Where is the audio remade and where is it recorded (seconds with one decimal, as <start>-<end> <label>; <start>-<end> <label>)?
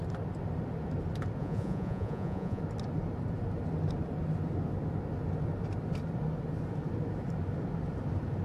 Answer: 0.0-1.4 recorded; 1.4-2.6 remade; 2.6-8.4 recorded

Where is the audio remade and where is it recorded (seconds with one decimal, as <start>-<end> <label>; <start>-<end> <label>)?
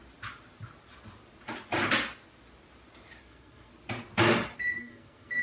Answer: 0.0-3.2 recorded; 3.2-3.7 remade; 3.7-4.8 recorded; 4.8-5.4 remade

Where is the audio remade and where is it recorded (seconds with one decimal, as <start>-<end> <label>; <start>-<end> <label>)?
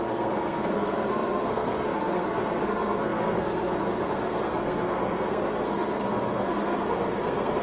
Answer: 0.0-7.6 remade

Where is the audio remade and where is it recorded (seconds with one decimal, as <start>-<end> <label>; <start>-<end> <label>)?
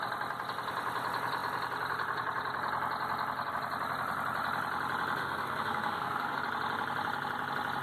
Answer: 0.0-5.2 recorded; 5.2-6.4 remade; 6.4-7.8 recorded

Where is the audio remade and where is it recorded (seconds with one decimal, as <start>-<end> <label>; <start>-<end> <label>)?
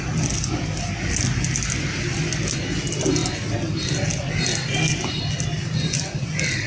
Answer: 0.0-6.7 recorded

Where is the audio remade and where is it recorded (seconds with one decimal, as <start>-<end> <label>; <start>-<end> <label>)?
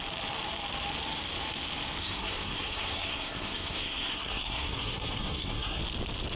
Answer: 0.0-2.0 recorded; 2.0-5.8 remade; 5.8-6.4 recorded